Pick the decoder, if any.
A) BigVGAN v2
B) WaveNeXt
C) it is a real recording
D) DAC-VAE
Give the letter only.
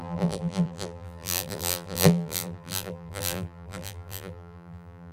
A